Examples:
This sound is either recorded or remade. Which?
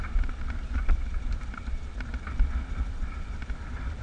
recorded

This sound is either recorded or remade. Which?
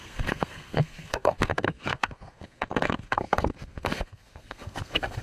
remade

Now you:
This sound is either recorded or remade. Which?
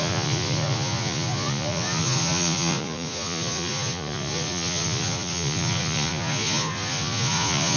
remade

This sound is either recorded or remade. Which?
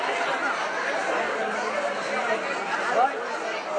recorded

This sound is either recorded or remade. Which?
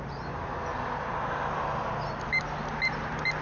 recorded